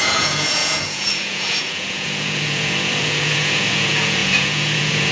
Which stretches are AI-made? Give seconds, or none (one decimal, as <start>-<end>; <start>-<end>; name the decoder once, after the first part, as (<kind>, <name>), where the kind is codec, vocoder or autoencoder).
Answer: 0.0-5.1 (vocoder, Vocos)